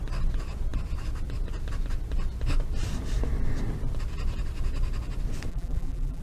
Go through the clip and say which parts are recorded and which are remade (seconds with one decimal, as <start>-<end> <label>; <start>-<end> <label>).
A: 0.0-5.5 recorded; 5.5-6.2 remade